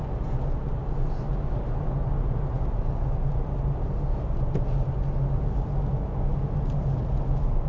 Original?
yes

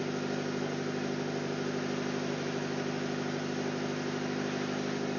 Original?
yes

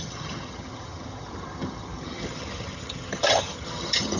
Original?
no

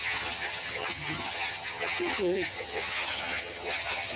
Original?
no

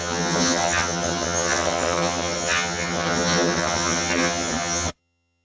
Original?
no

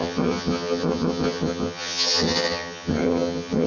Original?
no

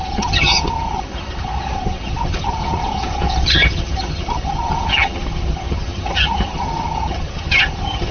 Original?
no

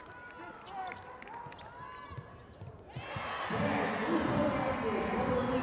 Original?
yes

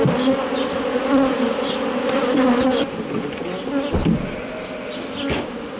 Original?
yes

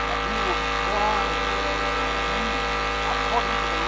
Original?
yes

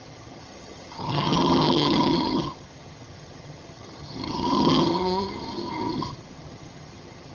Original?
no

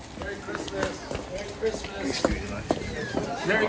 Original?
yes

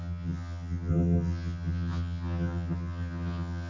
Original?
no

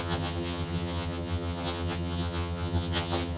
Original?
no